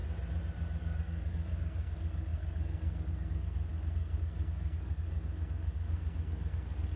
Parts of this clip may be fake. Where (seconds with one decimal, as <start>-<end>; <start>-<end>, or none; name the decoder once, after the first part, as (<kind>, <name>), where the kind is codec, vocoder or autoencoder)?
0.8-7.0 (codec, SNAC)